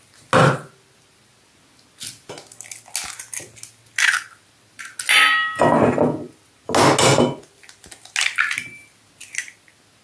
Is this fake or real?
real